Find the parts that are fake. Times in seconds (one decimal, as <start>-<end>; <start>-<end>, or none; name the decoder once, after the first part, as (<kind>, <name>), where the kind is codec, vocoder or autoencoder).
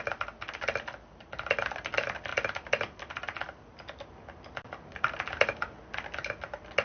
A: none